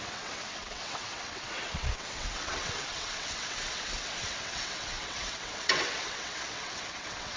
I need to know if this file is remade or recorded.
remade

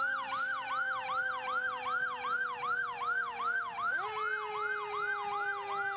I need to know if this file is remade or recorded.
recorded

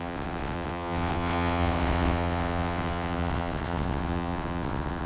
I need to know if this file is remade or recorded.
remade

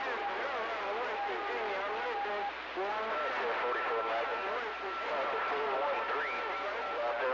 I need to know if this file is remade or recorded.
recorded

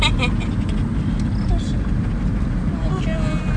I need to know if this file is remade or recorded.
recorded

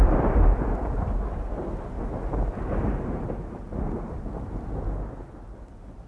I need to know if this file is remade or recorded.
recorded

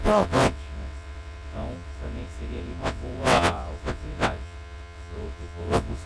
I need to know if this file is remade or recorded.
remade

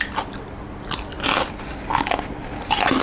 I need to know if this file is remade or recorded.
recorded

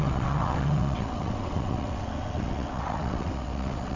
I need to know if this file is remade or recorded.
remade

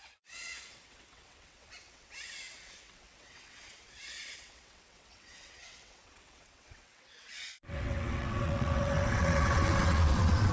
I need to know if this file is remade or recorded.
remade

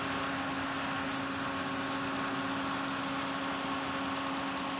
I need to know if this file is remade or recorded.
recorded